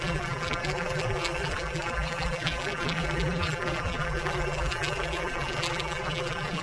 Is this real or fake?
fake